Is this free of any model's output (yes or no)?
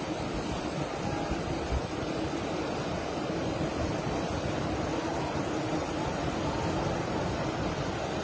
yes